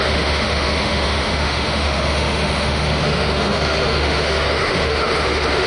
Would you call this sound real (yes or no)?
no